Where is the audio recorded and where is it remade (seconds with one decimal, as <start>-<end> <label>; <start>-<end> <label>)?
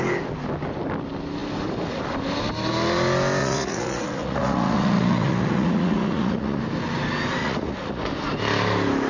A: 0.0-3.4 recorded; 3.4-6.6 remade; 6.6-7.4 recorded; 7.4-8.0 remade; 8.0-9.1 recorded